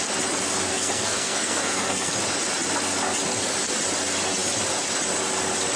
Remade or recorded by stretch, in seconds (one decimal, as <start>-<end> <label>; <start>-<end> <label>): 0.0-0.7 recorded; 0.7-2.1 remade; 2.1-5.8 recorded